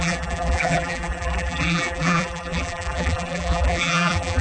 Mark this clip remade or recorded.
remade